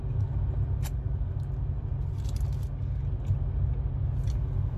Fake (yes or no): no